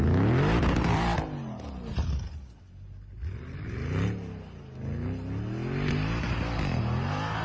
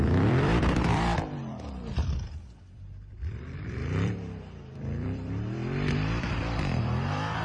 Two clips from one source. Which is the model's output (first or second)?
second